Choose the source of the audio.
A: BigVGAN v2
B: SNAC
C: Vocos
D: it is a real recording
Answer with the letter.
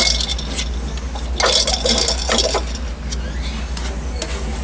D